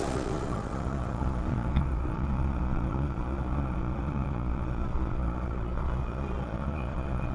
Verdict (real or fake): fake